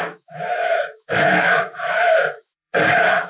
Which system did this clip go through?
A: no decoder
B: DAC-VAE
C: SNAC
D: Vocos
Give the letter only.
B